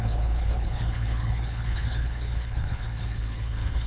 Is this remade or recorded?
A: remade